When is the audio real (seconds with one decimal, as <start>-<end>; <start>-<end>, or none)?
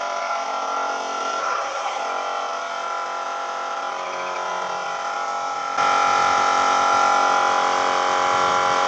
0.0-1.4; 2.0-8.9